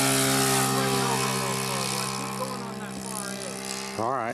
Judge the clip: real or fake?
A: real